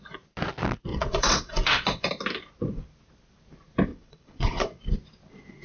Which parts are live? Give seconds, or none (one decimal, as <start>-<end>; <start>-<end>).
0.0-0.9; 2.1-3.9; 4.8-5.6